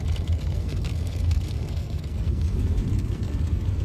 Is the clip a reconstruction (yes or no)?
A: yes